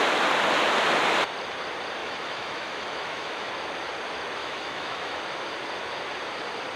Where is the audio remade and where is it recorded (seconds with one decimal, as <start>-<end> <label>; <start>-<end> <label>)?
0.0-2.0 recorded; 2.0-3.5 remade; 3.5-4.4 recorded; 4.4-5.2 remade; 5.2-6.8 recorded